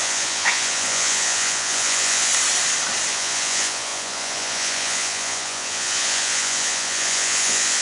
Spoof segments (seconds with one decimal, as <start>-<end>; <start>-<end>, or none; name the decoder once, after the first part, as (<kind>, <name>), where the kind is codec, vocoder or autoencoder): 0.0-2.3 (vocoder, Vocos); 3.1-7.8